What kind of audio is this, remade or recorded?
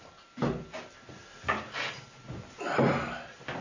recorded